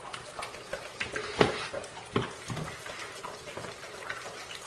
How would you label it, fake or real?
fake